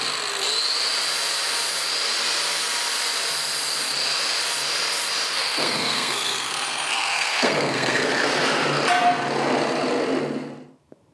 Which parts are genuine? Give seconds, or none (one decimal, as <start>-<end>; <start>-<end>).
0.0-5.4; 8.1-11.1